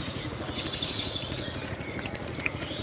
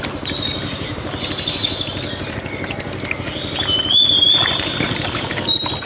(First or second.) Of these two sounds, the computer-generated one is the first